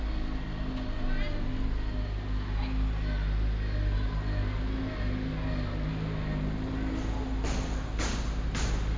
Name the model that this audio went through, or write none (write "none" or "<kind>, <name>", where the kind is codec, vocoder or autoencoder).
none